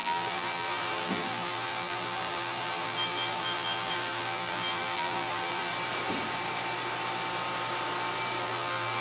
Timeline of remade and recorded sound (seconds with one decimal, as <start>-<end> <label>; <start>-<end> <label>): 0.0-5.7 remade; 5.7-8.4 recorded; 8.4-9.0 remade